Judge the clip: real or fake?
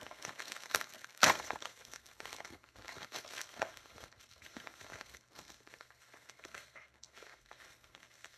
fake